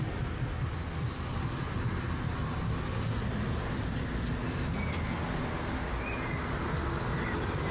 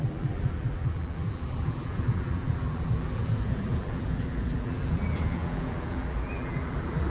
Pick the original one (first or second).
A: first